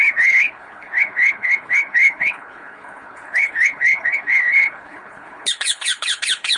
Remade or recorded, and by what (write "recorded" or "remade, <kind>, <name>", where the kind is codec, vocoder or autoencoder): remade, codec, HILCodec